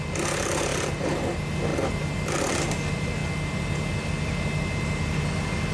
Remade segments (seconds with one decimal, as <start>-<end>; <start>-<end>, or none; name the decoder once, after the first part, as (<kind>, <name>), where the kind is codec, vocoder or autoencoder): none